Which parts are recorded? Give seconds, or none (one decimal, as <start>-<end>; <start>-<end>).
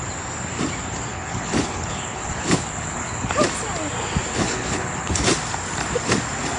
0.0-1.1; 3.3-4.3; 5.3-6.6